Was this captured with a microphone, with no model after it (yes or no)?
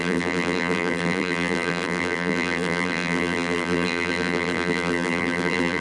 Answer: no